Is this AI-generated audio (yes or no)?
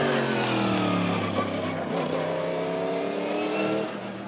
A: no